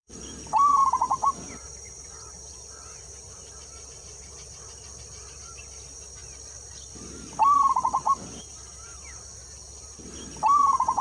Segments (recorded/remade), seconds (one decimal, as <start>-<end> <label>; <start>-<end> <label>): 0.0-6.2 remade; 6.2-8.3 recorded; 8.3-11.0 remade